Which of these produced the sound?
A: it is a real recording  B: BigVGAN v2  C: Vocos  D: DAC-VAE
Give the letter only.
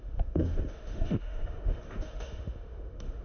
D